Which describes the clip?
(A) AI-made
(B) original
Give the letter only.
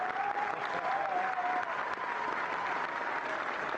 B